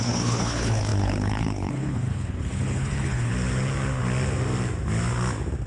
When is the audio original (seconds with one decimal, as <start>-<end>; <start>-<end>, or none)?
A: 3.3-5.7